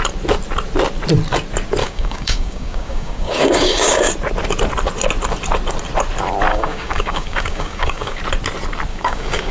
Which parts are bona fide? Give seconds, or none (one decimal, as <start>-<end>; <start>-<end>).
0.0-1.8; 4.1-6.5; 8.2-8.9